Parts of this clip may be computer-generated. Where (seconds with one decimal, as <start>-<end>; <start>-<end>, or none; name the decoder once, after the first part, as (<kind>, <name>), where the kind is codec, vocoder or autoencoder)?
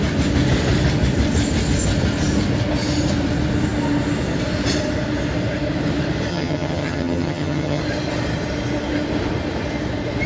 6.3-7.8 (vocoder, HiFi-GAN)